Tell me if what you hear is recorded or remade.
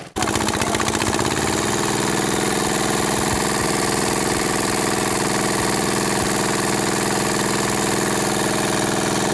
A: recorded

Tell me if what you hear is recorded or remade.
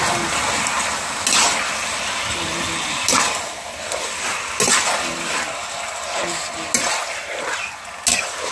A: recorded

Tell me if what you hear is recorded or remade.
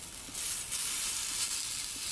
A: recorded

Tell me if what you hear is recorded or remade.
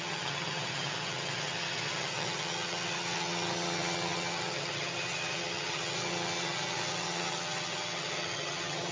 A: remade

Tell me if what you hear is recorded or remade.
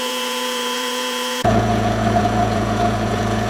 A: remade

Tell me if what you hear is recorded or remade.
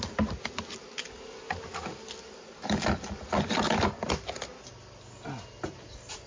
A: recorded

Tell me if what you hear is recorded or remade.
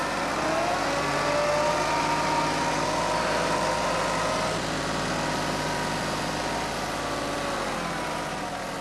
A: recorded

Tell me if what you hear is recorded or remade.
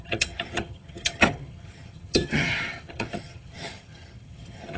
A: remade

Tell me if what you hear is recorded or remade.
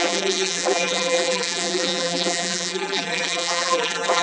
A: remade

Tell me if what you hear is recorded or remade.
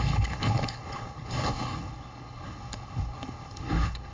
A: remade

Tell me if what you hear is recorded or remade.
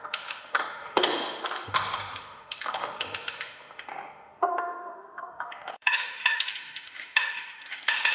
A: remade